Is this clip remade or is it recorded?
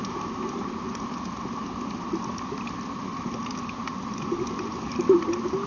recorded